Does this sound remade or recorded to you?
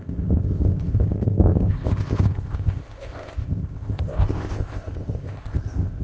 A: remade